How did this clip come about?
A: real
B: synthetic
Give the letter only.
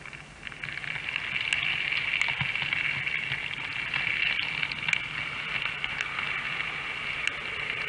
A